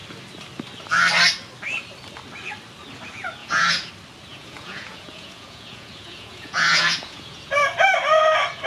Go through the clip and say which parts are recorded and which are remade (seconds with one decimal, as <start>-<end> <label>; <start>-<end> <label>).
0.0-3.4 recorded; 3.4-3.9 remade; 3.9-4.3 recorded; 4.3-7.5 remade; 7.5-8.7 recorded